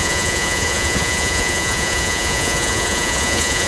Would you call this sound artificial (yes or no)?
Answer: yes